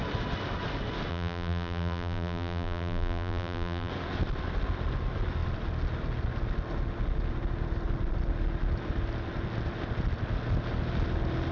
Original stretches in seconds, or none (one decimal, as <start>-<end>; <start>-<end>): 0.0-1.1; 3.9-11.5